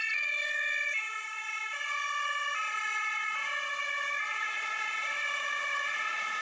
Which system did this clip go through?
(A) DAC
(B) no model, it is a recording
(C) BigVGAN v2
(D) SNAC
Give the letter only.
C